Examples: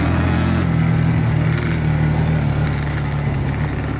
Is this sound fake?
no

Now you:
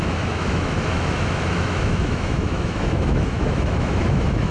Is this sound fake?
yes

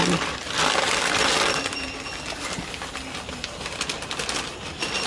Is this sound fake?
no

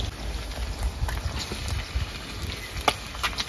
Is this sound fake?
no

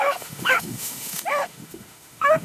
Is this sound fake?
yes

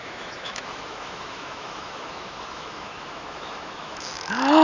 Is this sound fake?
yes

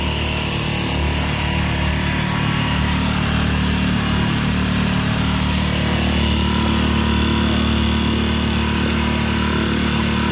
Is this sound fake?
no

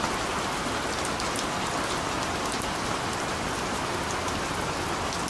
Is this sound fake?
no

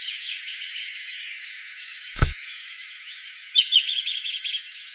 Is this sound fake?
yes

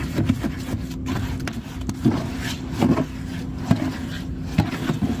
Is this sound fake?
no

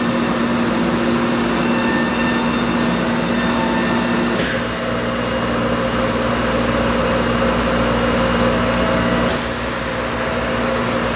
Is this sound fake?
no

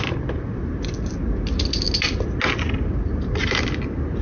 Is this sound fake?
no